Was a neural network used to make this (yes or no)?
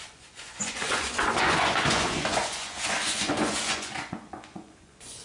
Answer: yes